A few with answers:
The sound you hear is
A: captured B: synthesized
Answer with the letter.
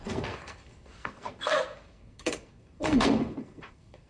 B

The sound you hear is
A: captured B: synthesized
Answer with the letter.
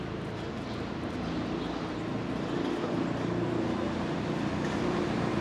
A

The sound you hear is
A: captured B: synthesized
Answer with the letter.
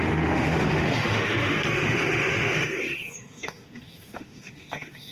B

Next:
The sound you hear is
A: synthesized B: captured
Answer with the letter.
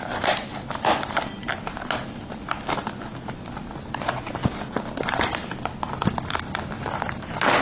B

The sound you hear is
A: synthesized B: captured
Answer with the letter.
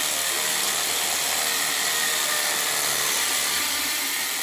B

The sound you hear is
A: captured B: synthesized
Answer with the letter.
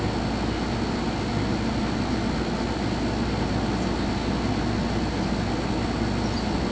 A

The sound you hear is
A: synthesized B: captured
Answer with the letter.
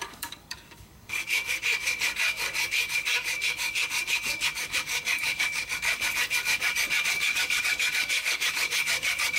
A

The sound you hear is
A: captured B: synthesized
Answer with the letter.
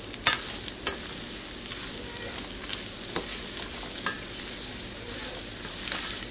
B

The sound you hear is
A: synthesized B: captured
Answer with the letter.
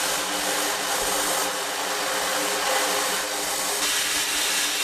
B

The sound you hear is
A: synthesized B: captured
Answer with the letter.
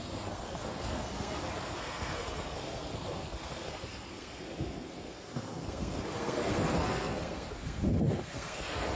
A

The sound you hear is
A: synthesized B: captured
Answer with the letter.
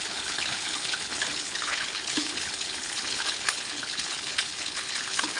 A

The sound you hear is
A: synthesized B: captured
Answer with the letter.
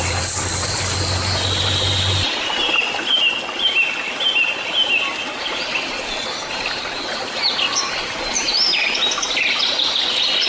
B